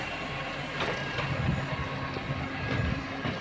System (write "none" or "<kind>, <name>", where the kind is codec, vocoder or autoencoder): none